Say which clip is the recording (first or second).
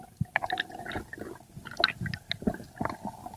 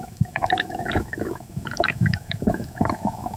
first